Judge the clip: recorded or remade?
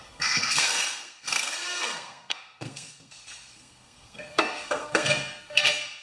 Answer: remade